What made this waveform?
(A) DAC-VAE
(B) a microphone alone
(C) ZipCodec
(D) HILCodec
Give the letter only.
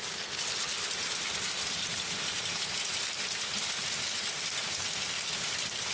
B